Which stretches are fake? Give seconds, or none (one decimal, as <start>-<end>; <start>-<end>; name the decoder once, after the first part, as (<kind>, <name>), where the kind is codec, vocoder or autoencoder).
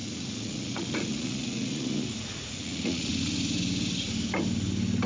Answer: 0.0-3.1 (vocoder, Vocos)